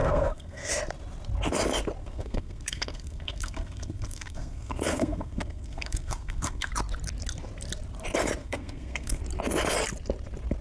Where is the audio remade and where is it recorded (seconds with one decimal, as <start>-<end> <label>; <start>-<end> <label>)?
0.0-0.7 remade; 0.7-2.0 recorded; 2.0-6.7 remade; 6.7-8.4 recorded; 8.4-9.2 remade; 9.2-10.6 recorded